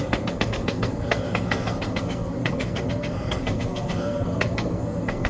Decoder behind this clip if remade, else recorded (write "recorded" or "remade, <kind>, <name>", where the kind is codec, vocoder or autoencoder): remade, codec, SNAC